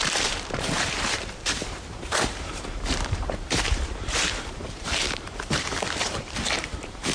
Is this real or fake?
fake